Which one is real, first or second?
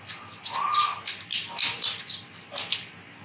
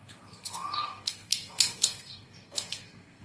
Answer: first